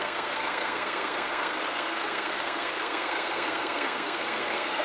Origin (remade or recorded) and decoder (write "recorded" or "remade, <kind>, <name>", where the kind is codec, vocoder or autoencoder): remade, codec, SNAC